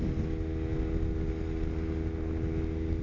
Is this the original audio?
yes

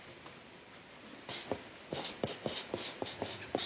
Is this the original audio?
yes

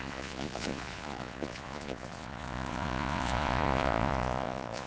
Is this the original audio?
no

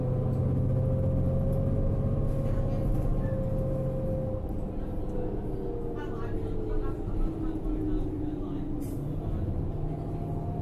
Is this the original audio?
yes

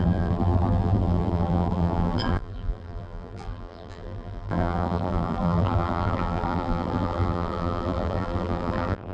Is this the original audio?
no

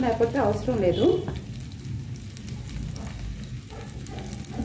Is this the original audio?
yes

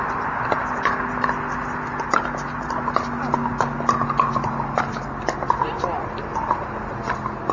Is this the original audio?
yes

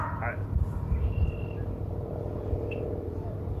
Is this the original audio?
no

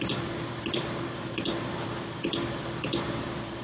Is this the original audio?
no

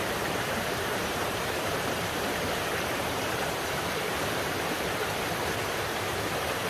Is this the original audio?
no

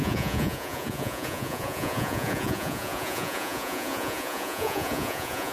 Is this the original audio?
no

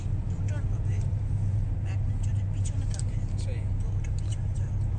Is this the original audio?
yes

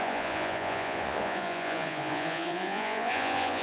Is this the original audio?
no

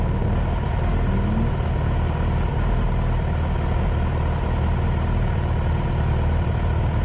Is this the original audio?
yes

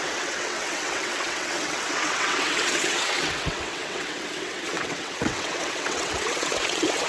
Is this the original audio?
no